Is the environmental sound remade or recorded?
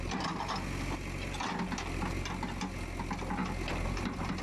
recorded